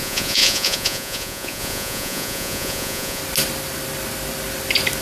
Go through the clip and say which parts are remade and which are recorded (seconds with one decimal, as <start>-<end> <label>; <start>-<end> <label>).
0.0-3.2 remade; 3.2-5.0 recorded